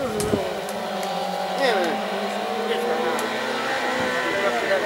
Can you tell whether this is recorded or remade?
recorded